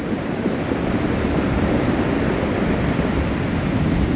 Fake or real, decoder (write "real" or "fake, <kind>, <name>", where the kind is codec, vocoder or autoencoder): fake, vocoder, BigVGAN v2